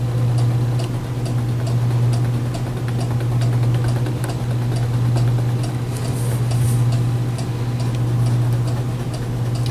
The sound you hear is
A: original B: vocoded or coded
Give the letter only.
A